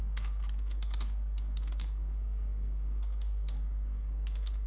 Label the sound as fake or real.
fake